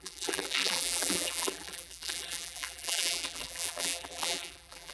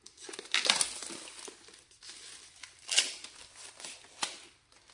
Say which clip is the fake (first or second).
first